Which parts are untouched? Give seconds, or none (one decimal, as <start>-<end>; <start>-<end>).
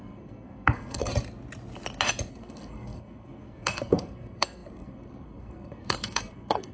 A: 1.1-2.3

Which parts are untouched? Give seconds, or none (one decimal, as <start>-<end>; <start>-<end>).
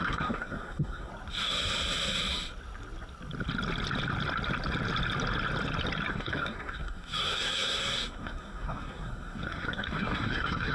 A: 1.1-6.1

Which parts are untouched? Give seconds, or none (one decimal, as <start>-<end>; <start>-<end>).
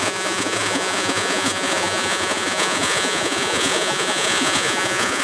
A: none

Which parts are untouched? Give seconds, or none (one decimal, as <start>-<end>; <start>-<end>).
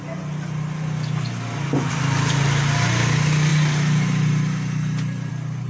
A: 0.0-5.7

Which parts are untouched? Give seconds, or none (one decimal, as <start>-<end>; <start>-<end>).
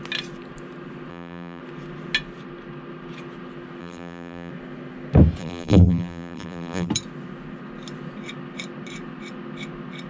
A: 0.0-1.1; 1.6-3.8; 4.5-5.4; 6.9-10.1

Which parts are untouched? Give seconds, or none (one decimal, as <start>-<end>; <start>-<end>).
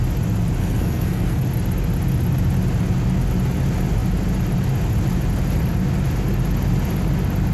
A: 0.0-0.6; 1.4-7.5